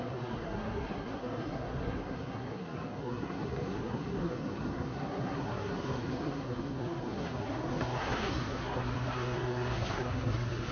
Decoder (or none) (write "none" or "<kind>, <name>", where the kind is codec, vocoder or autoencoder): codec, SNAC